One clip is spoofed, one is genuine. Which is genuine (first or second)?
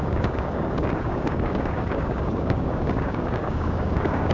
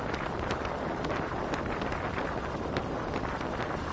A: second